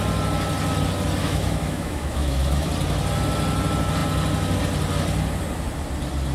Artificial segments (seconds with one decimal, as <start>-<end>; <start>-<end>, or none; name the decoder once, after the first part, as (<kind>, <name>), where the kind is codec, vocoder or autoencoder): 1.2-2.7 (autoencoder, DAC-VAE)